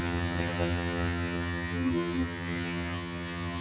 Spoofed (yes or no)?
yes